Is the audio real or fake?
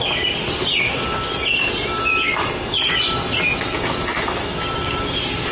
real